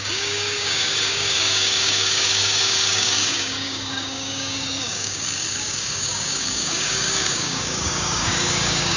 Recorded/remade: remade